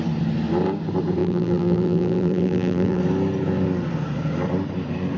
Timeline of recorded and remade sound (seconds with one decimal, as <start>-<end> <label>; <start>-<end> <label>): 0.0-1.2 recorded; 1.2-3.0 remade; 3.0-5.2 recorded